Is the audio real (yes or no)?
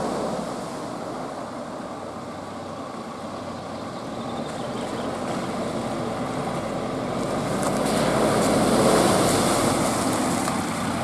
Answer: yes